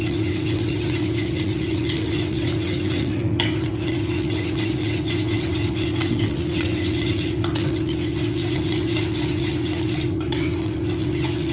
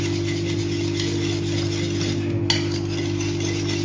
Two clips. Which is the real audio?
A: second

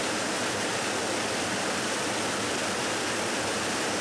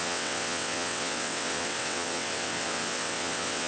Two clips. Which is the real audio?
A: first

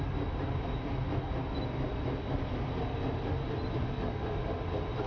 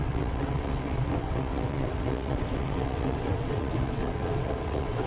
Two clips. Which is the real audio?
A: first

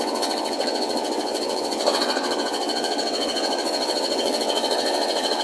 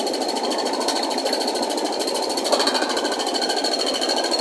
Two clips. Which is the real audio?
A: second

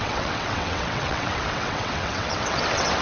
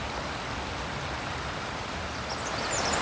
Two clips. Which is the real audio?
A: second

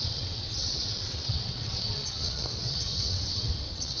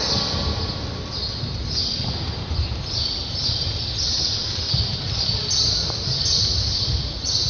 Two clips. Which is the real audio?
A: second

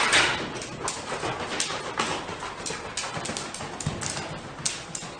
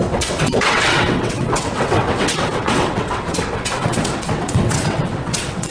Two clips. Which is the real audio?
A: first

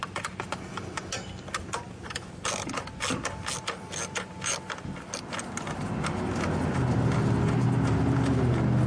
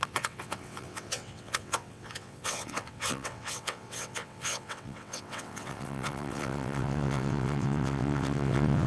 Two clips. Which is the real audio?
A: first